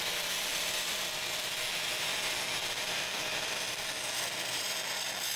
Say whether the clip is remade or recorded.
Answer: recorded